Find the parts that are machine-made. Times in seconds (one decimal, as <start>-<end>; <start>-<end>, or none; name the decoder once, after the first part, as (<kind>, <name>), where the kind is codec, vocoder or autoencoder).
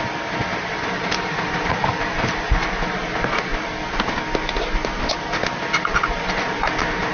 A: 0.5-2.8 (vocoder, BigVGAN v2)